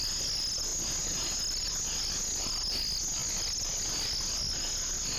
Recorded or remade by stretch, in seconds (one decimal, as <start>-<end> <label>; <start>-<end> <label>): 0.0-5.2 recorded

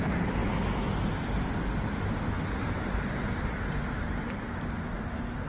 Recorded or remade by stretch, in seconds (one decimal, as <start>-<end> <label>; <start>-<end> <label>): 0.0-5.5 recorded

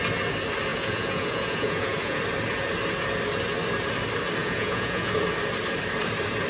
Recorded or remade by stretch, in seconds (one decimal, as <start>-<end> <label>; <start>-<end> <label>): 0.0-0.7 recorded; 0.7-2.2 remade; 2.2-4.4 recorded; 4.4-5.1 remade; 5.1-6.5 recorded

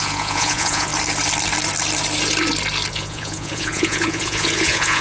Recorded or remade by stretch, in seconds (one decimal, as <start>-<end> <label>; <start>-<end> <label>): 0.0-0.9 remade; 0.9-2.9 recorded; 2.9-5.0 remade

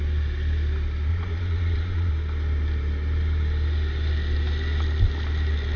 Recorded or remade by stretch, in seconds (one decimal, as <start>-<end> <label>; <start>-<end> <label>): 0.0-1.1 recorded; 1.1-2.1 remade; 2.1-5.8 recorded

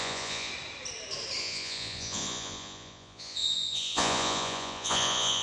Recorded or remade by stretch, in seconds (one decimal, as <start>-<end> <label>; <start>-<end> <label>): 0.0-0.5 remade; 0.5-1.4 recorded; 1.4-5.4 remade